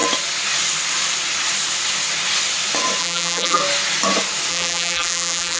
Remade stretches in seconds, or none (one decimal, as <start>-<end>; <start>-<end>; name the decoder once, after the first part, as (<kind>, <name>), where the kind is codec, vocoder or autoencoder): 3.0-3.6 (vocoder, BigVGAN v2); 4.5-5.6

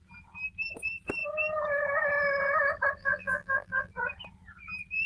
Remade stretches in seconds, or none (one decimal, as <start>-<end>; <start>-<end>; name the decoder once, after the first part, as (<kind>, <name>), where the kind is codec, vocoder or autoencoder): 3.0-3.9 (vocoder, BigVGAN v2)